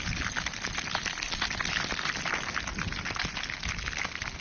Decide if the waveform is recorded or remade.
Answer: recorded